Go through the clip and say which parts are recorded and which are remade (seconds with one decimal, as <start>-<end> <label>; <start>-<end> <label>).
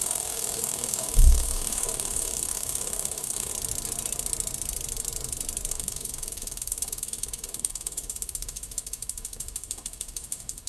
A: 0.0-3.5 remade; 3.5-5.7 recorded; 5.7-10.7 remade